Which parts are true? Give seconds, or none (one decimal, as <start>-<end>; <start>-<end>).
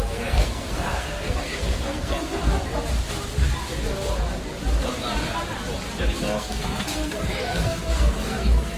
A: 2.4-6.2